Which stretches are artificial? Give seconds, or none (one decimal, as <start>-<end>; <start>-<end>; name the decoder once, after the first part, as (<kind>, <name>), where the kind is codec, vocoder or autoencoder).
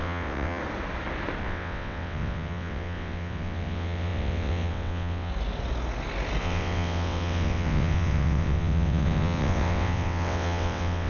0.0-0.6 (vocoder, WaveNeXt); 1.4-5.3; 6.4-11.1